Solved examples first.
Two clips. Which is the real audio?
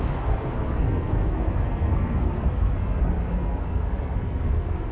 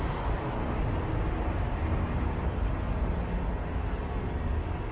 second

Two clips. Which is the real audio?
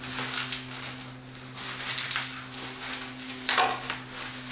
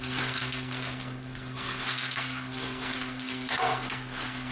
first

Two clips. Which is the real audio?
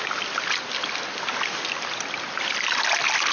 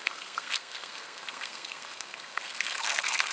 first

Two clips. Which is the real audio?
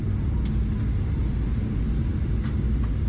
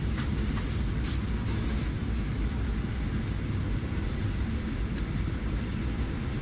first